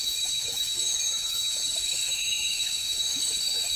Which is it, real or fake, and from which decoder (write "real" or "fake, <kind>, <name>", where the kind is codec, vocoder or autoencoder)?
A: fake, autoencoder, DAC-VAE